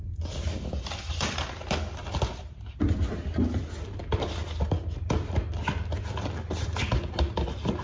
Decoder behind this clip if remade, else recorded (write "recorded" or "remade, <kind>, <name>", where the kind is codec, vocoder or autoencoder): recorded